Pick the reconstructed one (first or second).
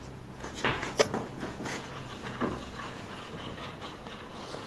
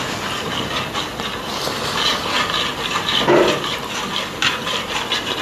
first